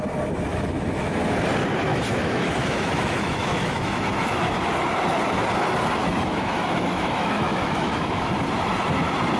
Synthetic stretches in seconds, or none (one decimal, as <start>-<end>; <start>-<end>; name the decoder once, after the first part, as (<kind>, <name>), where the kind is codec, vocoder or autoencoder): 0.5-1.2 (autoencoder, DAC-VAE); 1.9-4.5; 6.0-8.3